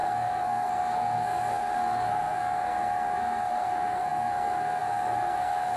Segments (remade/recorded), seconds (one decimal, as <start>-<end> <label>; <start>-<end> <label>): 0.0-5.8 remade